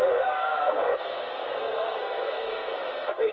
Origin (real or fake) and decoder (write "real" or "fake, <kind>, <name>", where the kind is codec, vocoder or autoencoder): fake, codec, SNAC